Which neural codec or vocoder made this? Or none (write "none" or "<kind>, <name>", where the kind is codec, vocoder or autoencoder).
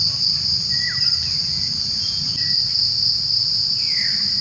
none